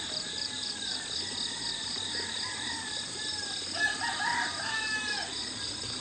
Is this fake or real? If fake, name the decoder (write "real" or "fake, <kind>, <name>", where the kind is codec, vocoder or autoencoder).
real